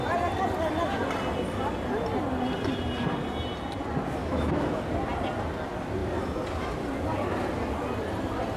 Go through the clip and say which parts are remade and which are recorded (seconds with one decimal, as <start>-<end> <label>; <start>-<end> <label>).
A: 0.0-4.2 recorded; 4.2-4.8 remade; 4.8-8.6 recorded